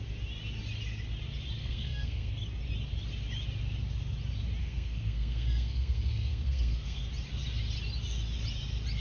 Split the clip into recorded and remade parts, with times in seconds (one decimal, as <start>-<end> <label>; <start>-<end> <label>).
0.0-1.6 recorded; 1.6-2.3 remade; 2.3-4.6 recorded; 4.6-7.0 remade; 7.0-9.0 recorded